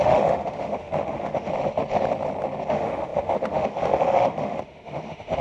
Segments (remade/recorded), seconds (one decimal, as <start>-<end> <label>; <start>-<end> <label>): 0.0-1.5 remade; 1.5-2.7 recorded; 2.7-5.4 remade

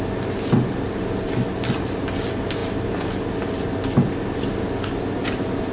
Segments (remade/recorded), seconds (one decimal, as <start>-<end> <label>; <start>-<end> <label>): 0.0-5.7 recorded

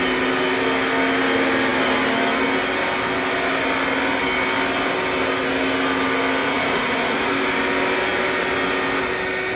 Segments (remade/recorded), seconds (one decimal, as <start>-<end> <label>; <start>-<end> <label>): 0.0-6.4 recorded; 6.4-7.3 remade; 7.3-9.6 recorded

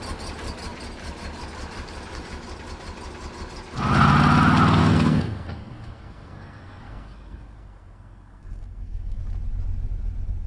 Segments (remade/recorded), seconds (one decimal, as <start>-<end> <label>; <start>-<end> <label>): 0.0-4.8 recorded; 4.8-9.2 remade; 9.2-10.5 recorded